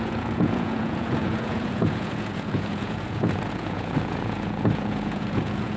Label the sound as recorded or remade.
remade